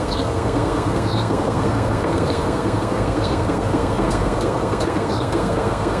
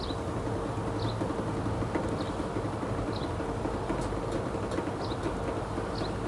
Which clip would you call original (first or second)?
second